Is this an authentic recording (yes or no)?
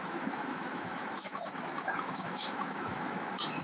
no